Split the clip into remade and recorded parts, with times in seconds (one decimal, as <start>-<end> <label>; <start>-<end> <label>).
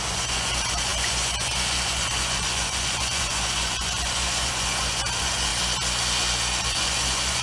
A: 0.0-5.5 remade; 5.5-6.6 recorded; 6.6-7.4 remade